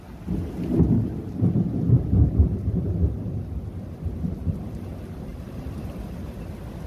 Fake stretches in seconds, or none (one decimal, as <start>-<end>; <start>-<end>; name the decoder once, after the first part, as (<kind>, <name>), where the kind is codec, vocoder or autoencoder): 5.3-6.1 (vocoder, BigVGAN v2)